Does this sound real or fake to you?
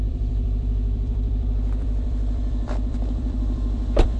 fake